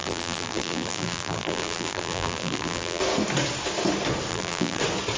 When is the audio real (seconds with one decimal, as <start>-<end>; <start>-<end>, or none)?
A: 3.0-4.3; 4.8-5.2